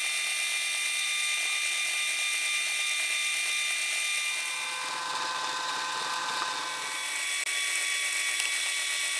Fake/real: real